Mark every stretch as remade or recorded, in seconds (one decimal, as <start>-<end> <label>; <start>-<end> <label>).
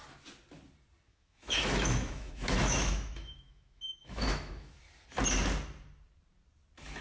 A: 0.0-1.1 recorded; 1.1-4.8 remade; 4.8-7.0 recorded